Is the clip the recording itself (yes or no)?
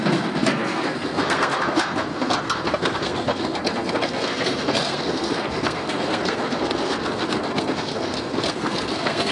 no